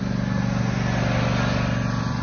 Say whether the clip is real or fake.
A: real